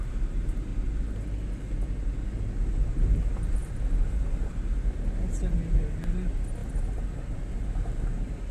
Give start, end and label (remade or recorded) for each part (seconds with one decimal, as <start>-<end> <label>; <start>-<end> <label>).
0.0-0.7 remade; 0.7-3.2 recorded; 3.2-3.6 remade; 3.6-4.1 recorded; 4.1-8.5 remade